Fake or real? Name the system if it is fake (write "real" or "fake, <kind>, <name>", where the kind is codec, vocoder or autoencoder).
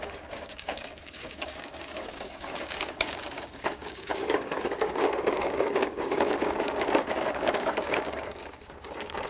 fake, codec, DAC